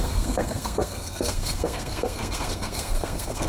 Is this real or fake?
fake